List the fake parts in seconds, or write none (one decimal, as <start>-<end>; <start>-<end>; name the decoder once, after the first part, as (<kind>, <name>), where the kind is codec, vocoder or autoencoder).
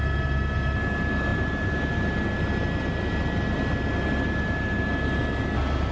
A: none